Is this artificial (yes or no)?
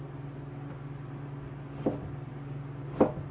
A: no